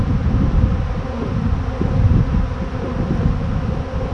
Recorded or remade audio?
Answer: recorded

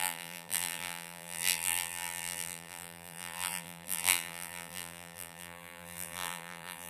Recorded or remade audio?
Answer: remade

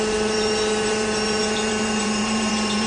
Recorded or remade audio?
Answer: remade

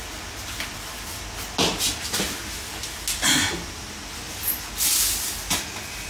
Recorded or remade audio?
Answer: recorded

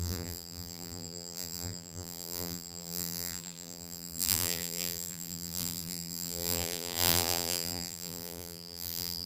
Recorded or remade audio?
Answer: remade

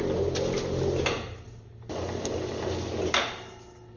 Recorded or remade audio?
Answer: recorded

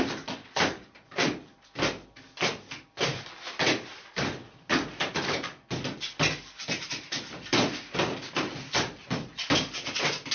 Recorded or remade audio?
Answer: recorded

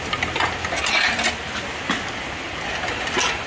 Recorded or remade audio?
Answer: recorded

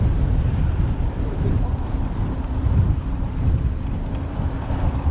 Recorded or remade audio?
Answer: remade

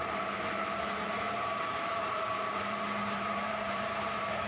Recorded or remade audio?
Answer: remade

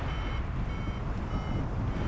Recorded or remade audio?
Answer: remade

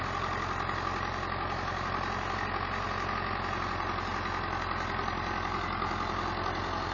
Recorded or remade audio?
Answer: recorded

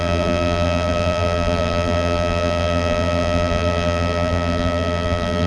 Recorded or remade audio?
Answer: remade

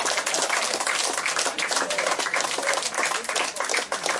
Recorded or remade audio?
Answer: remade